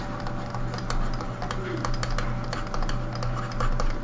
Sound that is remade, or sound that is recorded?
recorded